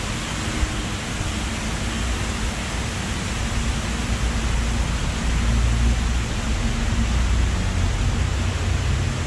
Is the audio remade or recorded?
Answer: recorded